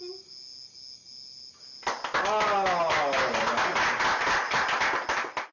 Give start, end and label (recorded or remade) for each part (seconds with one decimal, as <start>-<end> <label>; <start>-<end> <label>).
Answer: 0.0-5.5 recorded